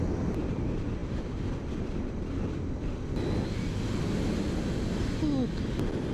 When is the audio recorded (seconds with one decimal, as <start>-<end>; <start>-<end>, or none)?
0.0-6.1